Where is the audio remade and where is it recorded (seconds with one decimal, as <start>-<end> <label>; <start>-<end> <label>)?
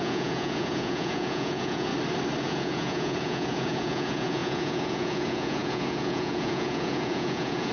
0.0-1.9 remade; 1.9-2.4 recorded; 2.4-7.7 remade